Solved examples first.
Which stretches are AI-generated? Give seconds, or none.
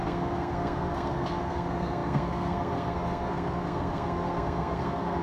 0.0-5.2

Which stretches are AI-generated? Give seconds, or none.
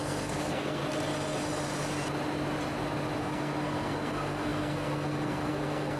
0.0-0.8; 3.2-6.0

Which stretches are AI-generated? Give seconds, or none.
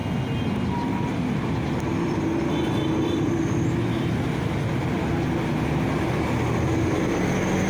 none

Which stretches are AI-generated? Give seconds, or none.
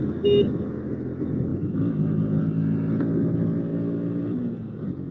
none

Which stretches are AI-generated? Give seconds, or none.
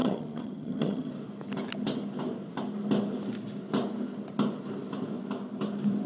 0.0-1.1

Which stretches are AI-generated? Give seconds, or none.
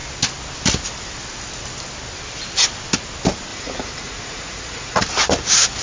3.5-5.0